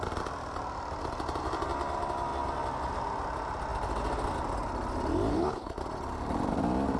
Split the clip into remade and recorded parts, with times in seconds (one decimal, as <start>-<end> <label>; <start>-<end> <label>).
0.0-5.3 recorded; 5.3-5.8 remade; 5.8-7.0 recorded